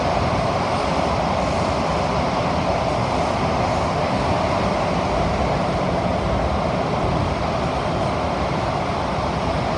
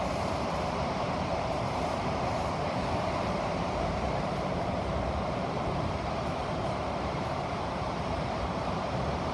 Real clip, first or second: first